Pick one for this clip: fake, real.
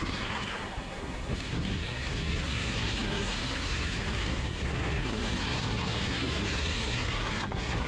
fake